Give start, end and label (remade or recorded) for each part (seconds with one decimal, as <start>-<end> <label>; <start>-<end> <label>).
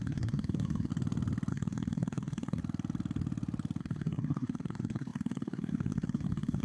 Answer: 0.0-0.9 remade; 0.9-1.5 recorded; 1.5-2.6 remade; 2.6-3.8 recorded; 3.8-6.6 remade